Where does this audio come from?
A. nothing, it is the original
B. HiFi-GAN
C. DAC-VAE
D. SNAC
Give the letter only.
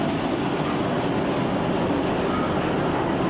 A